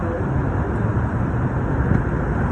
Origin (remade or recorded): recorded